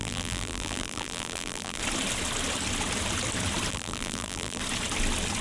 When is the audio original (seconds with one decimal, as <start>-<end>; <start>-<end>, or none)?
1.8-3.7; 4.6-5.4